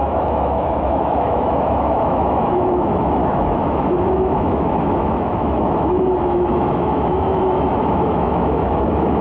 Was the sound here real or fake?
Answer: fake